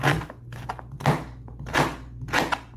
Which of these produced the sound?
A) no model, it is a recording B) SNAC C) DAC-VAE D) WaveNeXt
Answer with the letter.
A